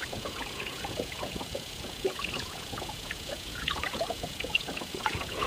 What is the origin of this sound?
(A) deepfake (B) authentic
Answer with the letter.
A